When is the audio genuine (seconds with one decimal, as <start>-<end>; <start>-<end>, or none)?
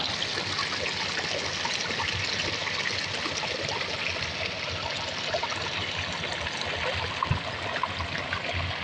0.0-8.8